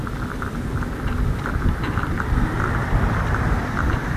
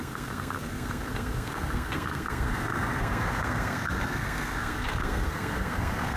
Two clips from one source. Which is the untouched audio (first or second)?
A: first